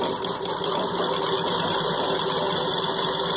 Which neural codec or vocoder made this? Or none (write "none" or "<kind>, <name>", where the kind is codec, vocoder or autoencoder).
none